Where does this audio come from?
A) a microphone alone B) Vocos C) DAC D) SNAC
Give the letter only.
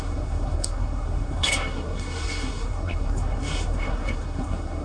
D